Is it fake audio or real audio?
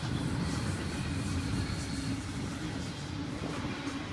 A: real